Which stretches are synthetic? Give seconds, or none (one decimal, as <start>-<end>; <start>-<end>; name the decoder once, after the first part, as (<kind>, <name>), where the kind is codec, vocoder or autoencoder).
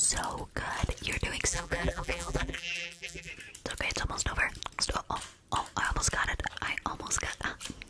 1.5-3.3 (vocoder, BigVGAN v2)